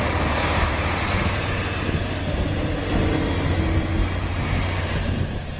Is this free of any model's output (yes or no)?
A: yes